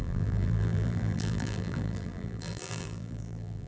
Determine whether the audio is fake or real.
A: fake